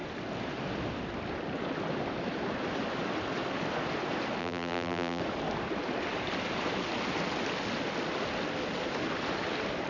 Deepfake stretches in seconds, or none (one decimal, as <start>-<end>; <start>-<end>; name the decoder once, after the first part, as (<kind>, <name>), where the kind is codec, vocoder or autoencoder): 4.4-5.2 (vocoder, BigVGAN v2)